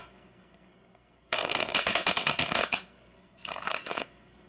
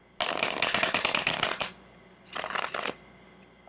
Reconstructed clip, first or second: first